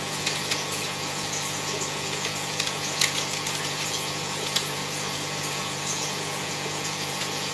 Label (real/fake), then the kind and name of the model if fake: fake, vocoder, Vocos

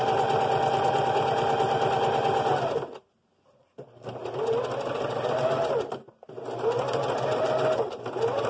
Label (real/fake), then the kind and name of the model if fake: real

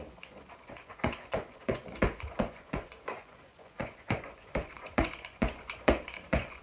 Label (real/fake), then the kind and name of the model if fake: fake, vocoder, Vocos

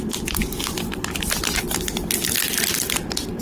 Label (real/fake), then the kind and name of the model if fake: real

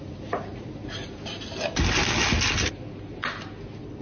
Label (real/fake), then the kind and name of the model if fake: real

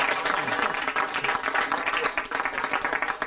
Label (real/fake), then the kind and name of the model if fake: real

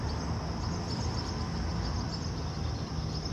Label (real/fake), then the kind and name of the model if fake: real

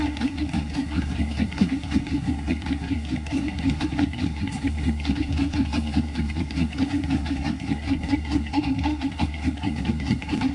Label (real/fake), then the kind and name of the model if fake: fake, codec, SNAC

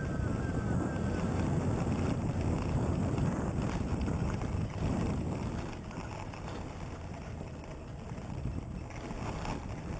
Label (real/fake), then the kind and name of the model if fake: real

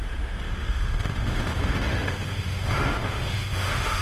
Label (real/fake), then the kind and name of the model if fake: fake, autoencoder, DAC-VAE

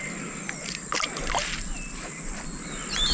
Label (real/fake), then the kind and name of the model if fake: real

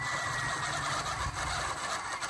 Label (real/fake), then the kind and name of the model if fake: real